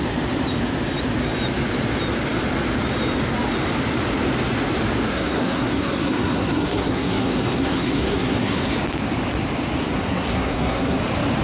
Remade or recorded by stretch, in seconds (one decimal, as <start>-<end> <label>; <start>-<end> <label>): 0.0-5.1 recorded; 5.1-8.7 remade; 8.7-9.8 recorded; 9.8-11.0 remade; 11.0-11.4 recorded